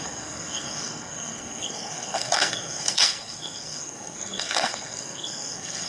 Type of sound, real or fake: fake